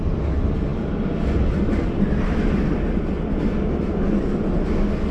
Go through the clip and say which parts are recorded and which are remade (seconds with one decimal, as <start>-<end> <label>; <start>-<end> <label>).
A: 0.0-5.1 recorded